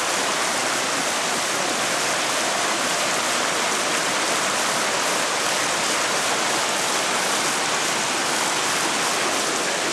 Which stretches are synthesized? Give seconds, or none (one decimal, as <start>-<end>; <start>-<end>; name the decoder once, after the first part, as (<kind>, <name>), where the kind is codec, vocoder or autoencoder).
none